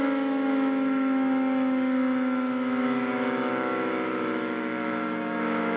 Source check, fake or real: fake